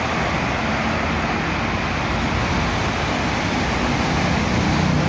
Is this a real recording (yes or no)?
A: yes